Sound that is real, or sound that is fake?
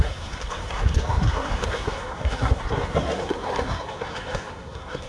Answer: fake